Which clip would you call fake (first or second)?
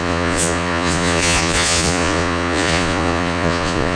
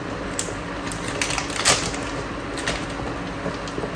first